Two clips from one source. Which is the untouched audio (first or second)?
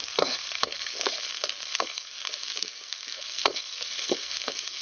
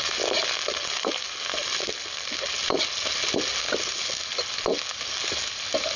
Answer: second